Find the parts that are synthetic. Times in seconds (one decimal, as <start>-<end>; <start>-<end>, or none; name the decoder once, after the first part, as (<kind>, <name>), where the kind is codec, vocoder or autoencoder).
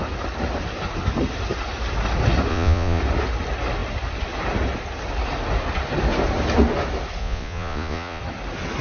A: 2.5-3.0 (vocoder, Vocos); 7.2-8.2